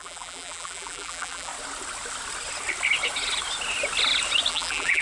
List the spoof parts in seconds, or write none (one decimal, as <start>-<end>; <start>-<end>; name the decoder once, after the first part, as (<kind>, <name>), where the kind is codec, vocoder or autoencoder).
0.0-1.5 (vocoder, BigVGAN v2); 4.5-5.0